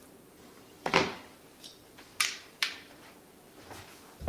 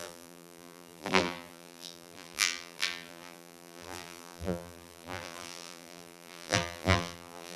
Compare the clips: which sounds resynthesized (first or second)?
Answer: second